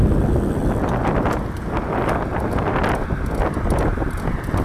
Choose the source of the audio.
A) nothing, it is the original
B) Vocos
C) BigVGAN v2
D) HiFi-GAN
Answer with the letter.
A